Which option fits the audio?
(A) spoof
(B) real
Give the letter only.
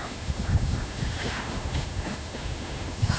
A